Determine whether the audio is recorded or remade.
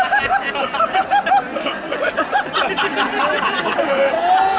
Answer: recorded